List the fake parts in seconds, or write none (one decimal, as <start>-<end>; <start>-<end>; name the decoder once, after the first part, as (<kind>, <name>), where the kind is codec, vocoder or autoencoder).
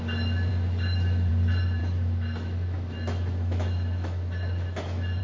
0.5-1.3 (autoencoder, DAC-VAE); 1.8-5.2